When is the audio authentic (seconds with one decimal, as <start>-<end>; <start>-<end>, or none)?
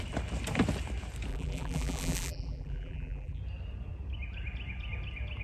0.0-1.3; 3.4-5.4